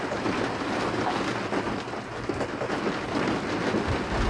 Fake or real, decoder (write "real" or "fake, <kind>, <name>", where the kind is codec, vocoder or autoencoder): real